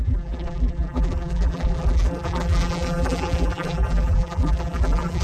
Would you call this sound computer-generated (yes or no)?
yes